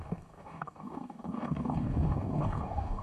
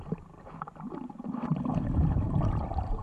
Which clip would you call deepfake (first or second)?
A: first